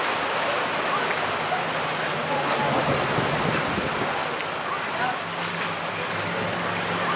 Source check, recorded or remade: recorded